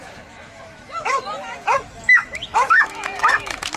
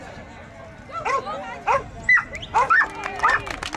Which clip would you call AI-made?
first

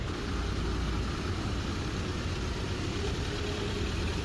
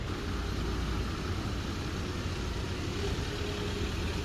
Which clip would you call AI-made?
first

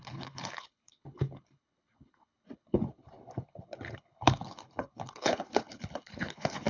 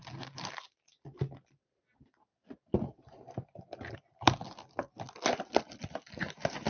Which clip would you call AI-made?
first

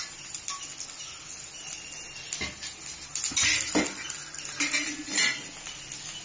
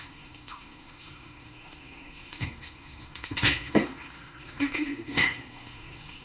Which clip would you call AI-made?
second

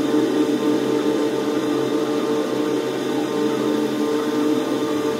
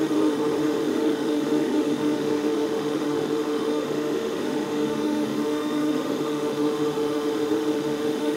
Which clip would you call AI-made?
second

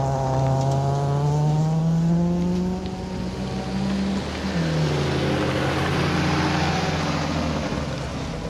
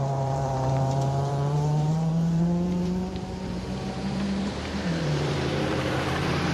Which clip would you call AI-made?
second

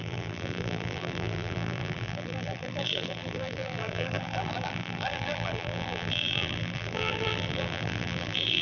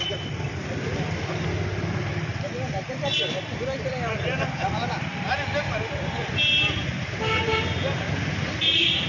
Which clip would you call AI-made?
first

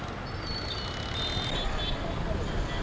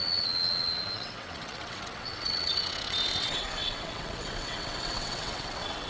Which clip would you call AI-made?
second